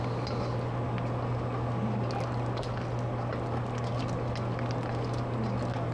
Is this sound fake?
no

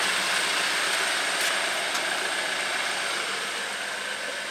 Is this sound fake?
no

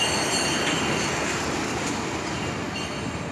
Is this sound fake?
no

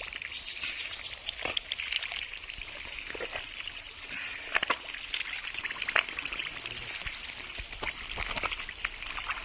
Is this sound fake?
no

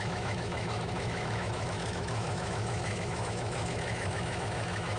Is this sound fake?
yes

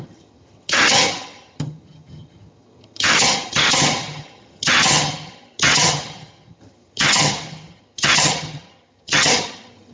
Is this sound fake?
yes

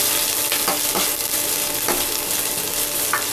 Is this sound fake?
no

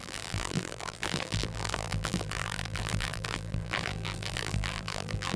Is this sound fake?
yes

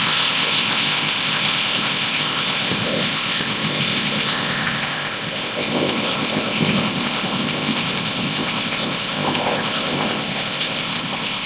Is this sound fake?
yes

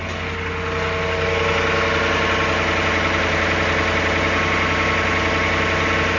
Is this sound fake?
no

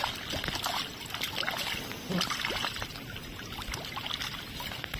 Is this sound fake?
no